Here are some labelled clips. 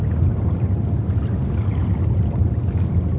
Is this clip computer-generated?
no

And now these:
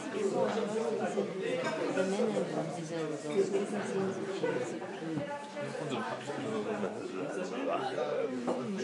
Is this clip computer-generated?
no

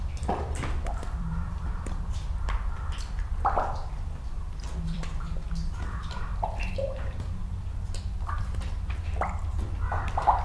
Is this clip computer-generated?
yes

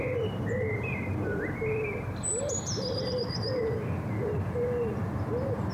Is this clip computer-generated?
yes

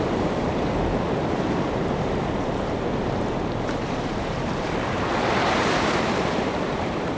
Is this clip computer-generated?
yes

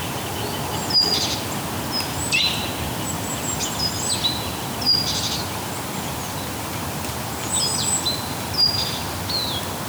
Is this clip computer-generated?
no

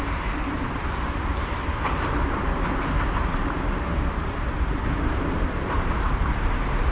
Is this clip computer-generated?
yes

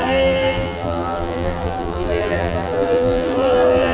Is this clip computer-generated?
yes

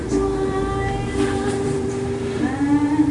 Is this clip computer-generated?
yes